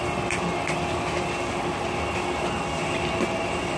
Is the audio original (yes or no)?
yes